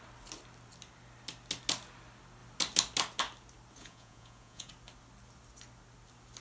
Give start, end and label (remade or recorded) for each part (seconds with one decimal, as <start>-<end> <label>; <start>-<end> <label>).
0.0-3.8 recorded; 3.8-4.7 remade; 4.7-6.4 recorded